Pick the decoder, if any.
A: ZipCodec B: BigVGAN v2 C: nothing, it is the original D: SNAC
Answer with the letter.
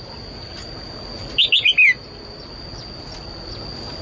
C